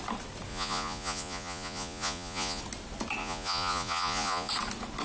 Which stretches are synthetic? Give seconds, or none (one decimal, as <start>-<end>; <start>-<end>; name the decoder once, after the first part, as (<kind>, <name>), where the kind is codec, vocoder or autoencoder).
0.5-2.6 (vocoder, Vocos); 3.2-4.5